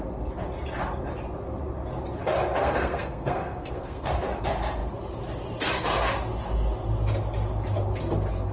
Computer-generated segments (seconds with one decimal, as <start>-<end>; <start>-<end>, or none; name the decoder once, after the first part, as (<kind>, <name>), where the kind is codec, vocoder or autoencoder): 2.6-4.1 (codec, SNAC)